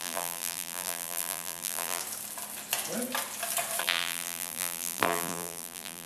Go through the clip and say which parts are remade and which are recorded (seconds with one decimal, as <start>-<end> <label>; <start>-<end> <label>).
0.0-2.0 remade; 2.0-3.8 recorded; 3.8-6.1 remade